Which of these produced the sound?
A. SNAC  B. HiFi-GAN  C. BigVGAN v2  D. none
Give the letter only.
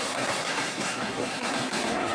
A